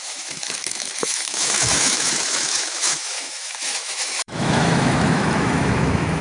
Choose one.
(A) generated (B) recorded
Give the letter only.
A